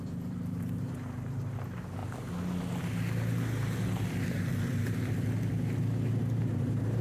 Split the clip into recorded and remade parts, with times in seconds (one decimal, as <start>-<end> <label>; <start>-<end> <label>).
0.0-2.0 remade; 2.0-6.2 recorded; 6.2-7.0 remade

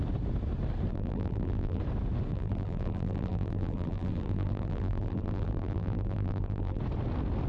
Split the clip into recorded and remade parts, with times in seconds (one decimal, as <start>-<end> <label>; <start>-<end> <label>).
0.0-0.9 recorded; 0.9-1.8 remade; 1.8-2.3 recorded; 2.3-6.8 remade; 6.8-7.5 recorded

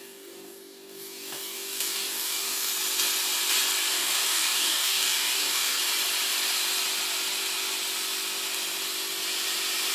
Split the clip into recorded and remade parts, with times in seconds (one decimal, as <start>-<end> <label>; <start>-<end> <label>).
0.0-2.7 remade; 2.7-3.9 recorded; 3.9-5.8 remade; 5.8-9.9 recorded

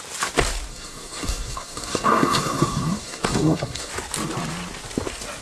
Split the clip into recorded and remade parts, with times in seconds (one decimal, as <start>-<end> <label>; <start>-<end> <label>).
0.0-0.7 recorded; 0.7-3.9 remade; 3.9-5.4 recorded